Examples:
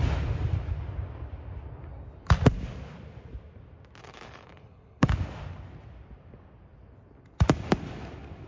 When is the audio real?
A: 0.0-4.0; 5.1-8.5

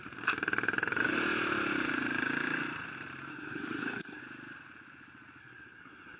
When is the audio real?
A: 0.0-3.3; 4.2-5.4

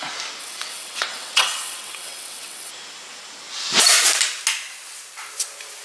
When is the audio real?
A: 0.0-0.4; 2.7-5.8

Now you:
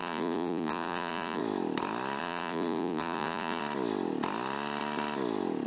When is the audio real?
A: 1.4-2.2; 3.6-5.7

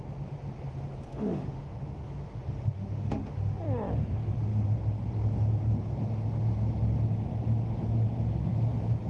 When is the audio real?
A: 0.0-1.1; 3.6-9.1